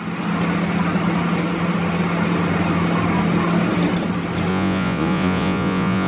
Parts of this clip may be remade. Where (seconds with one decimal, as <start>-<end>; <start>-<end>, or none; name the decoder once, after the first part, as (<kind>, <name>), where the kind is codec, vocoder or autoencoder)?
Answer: 4.5-6.1 (vocoder, Vocos)